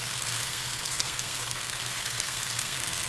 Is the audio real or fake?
fake